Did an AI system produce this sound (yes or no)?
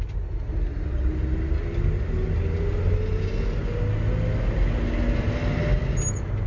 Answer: no